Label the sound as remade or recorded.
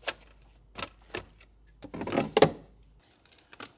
recorded